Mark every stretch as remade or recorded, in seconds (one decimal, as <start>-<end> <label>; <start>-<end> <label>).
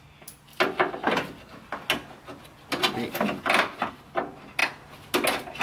0.0-5.6 recorded